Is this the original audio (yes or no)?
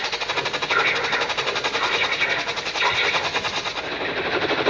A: yes